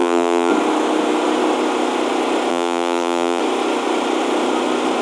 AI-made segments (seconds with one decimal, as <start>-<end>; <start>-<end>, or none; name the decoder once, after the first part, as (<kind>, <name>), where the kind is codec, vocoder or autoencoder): 0.0-0.5 (vocoder, BigVGAN v2); 2.5-3.4

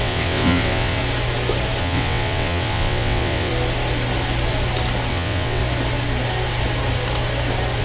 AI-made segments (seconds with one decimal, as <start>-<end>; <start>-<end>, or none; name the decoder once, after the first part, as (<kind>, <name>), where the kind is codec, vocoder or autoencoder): 0.0-1.0 (vocoder, WaveNeXt); 1.8-3.5; 5.1-5.6

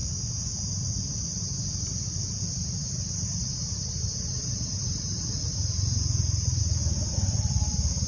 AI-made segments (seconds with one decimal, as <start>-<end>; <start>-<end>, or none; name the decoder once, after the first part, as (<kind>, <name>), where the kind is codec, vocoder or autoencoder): 1.4-8.1 (vocoder, BigVGAN v2)

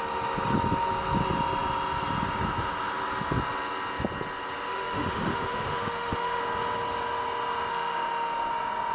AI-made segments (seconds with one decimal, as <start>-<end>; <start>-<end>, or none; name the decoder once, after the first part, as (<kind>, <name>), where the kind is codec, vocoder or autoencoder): 4.7-6.4 (autoencoder, DAC-VAE); 7.7-8.5

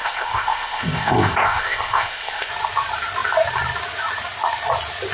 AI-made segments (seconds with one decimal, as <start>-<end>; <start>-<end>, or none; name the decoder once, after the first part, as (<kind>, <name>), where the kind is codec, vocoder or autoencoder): 0.0-2.5 (codec, ZipCodec)